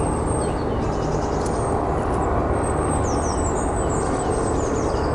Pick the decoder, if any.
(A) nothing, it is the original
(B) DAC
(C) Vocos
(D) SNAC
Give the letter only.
A